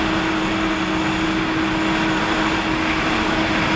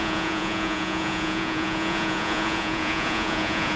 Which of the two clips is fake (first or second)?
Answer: second